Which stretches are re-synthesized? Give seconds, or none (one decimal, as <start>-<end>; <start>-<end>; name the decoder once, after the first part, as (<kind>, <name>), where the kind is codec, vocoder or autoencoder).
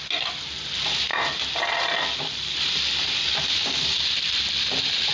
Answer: none